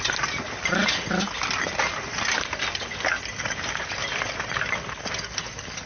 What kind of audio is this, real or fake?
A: real